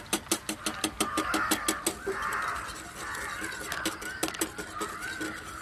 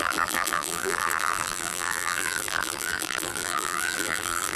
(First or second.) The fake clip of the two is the second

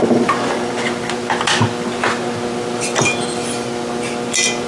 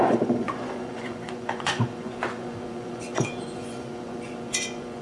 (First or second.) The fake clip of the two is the second